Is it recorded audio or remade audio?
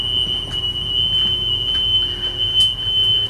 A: recorded